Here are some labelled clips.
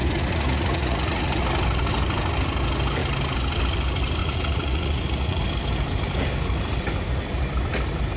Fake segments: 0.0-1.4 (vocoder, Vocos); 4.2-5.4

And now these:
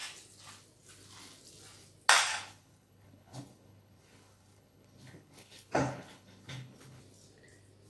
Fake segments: 2.3-7.0 (codec, HILCodec)

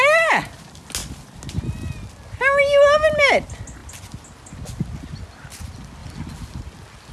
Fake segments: none

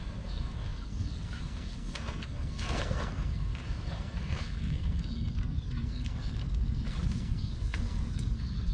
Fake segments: 0.0-8.7 (codec, SNAC)

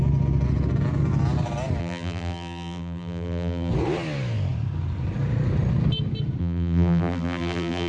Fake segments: 1.8-3.7 (vocoder, BigVGAN v2); 6.4-7.9

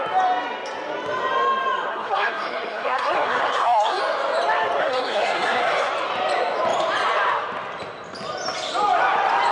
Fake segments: 1.9-4.0 (codec, SNAC); 4.8-5.9

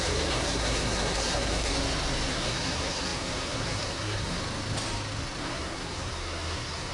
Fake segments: 0.0-1.7 (codec, SNAC); 2.3-4.4; 5.4-6.9